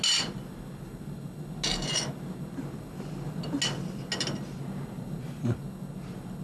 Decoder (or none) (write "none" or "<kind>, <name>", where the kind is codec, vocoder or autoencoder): none